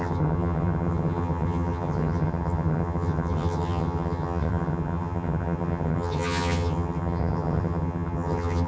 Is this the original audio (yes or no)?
no